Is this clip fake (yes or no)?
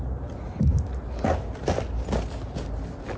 no